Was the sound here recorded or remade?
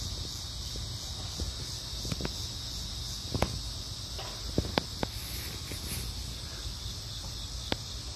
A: recorded